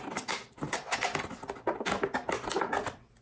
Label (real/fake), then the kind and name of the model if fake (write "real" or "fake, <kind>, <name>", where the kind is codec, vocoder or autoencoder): real